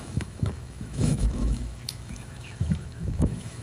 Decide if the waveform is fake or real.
fake